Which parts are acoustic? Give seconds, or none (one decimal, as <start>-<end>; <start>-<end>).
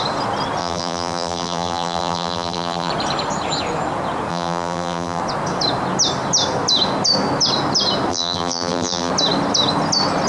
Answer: 0.0-0.6; 2.9-4.3; 5.2-8.1; 9.1-10.3